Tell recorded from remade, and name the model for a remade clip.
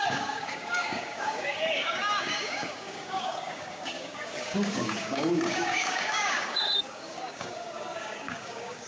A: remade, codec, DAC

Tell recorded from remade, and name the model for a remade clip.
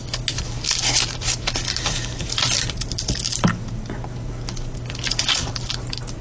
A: recorded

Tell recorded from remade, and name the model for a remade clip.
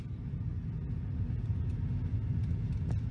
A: recorded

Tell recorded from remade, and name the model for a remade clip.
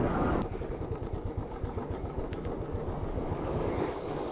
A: remade, codec, DAC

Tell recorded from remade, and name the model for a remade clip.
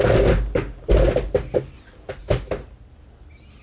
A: recorded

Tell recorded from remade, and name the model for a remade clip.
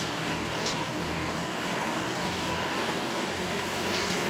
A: remade, codec, DAC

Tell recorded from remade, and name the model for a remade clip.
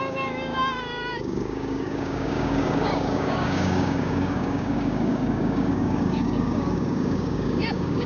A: remade, codec, DAC